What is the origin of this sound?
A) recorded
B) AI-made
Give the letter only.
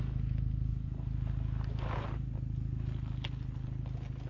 A